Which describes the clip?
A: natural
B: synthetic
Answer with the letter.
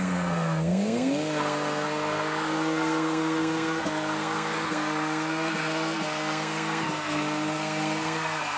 B